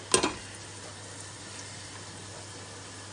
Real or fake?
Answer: real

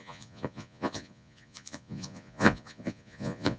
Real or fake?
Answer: fake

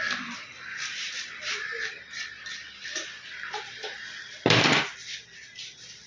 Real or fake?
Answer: fake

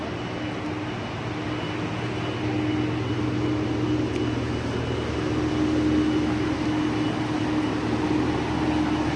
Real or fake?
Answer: real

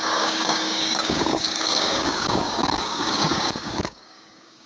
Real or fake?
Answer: fake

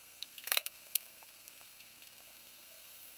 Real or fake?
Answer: fake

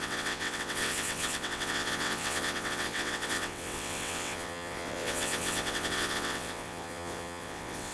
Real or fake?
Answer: fake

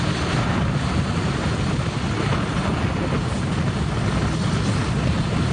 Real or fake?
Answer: real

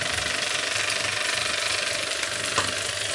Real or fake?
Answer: real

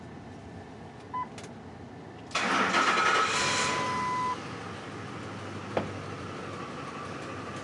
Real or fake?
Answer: real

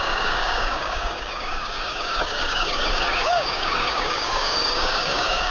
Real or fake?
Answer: fake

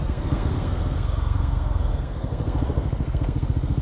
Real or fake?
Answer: fake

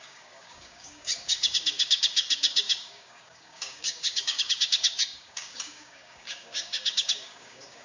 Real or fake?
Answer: fake